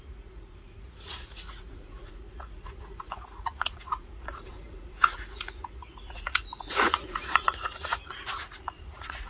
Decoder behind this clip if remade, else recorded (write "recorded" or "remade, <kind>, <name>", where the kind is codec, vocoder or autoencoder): remade, vocoder, Vocos